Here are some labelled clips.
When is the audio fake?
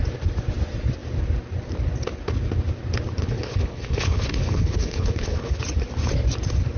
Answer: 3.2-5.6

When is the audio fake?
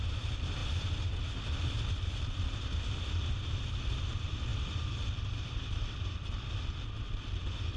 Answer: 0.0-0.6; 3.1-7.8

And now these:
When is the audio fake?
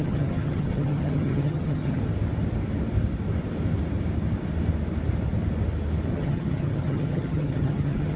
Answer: 0.0-2.0; 6.1-8.2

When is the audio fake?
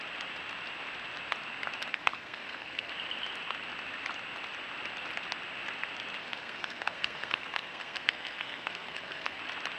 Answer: 1.9-2.9; 6.2-9.4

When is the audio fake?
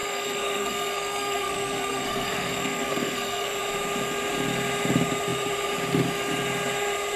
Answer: 0.0-3.6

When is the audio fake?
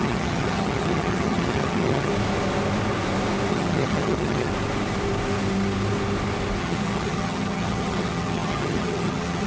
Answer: 0.0-2.1; 3.5-4.5; 6.6-9.5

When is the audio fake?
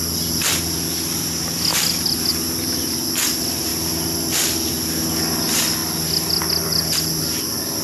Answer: 1.7-2.3; 3.7-4.7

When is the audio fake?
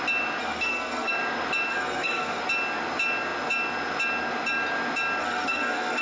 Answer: 0.4-1.1; 1.7-2.4; 5.2-6.0